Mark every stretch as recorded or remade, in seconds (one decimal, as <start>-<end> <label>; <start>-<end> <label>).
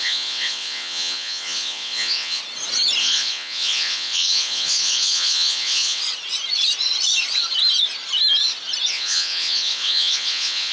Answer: 0.0-2.4 remade; 2.4-3.0 recorded; 3.0-6.0 remade; 6.0-8.9 recorded; 8.9-10.7 remade